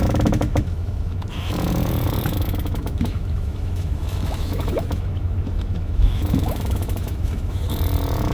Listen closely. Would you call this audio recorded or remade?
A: remade